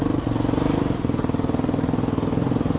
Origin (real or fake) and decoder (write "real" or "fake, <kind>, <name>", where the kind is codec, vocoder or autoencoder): real